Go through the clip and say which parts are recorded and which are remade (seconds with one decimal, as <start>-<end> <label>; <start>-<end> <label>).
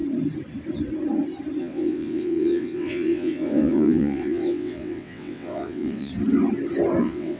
0.0-1.6 recorded; 1.6-6.1 remade; 6.1-7.0 recorded; 7.0-7.4 remade